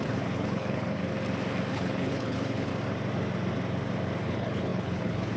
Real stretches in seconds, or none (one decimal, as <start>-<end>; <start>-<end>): 1.0-1.7; 2.7-4.2